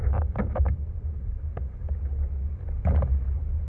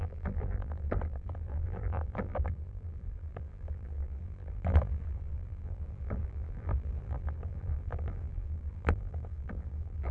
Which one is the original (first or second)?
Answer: first